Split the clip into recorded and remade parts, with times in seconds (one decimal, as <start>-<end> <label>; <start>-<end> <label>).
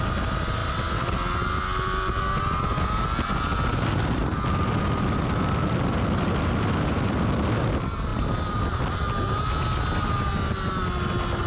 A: 0.0-8.1 recorded; 8.1-9.0 remade; 9.0-11.5 recorded